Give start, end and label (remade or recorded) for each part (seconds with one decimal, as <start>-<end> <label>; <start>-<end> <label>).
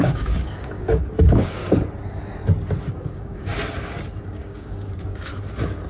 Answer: 0.0-1.6 remade; 1.6-2.9 recorded; 2.9-3.5 remade; 3.5-4.3 recorded; 4.3-5.3 remade; 5.3-5.9 recorded